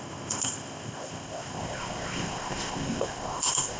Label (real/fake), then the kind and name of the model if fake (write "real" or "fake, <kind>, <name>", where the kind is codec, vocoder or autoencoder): fake, codec, ZipCodec